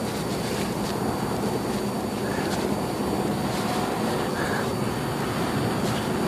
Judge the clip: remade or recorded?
recorded